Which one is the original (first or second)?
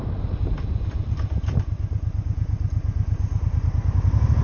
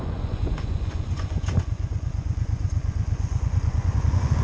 first